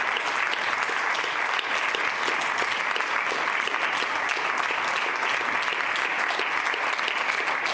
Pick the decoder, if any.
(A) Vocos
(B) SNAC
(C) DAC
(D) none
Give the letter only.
D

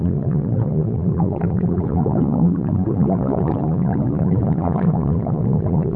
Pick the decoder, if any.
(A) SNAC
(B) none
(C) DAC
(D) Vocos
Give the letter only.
D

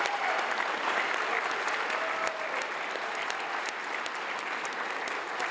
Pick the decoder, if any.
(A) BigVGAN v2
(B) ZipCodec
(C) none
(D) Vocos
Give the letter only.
C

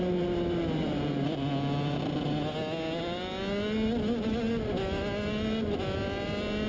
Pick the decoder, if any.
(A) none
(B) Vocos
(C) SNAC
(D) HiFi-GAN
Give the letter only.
A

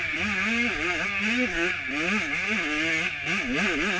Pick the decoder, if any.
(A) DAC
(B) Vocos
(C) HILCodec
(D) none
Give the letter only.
D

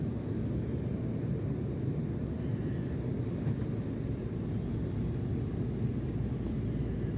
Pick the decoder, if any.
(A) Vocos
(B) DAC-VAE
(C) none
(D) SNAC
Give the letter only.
C